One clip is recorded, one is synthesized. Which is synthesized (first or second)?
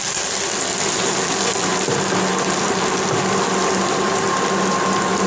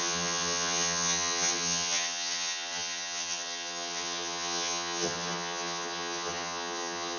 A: second